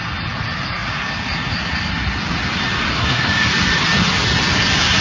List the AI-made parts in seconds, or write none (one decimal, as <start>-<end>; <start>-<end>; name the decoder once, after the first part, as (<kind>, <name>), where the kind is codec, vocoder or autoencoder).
3.0-3.5 (codec, SNAC)